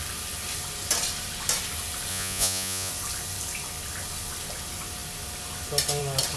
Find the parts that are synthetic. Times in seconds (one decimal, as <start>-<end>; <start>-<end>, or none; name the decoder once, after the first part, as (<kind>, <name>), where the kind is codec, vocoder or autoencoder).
2.1-2.9 (vocoder, Vocos)